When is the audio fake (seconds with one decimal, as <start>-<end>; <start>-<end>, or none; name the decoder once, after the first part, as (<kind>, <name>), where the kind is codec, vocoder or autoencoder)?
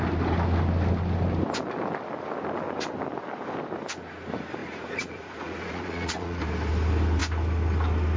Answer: 4.6-6.4 (vocoder, Vocos)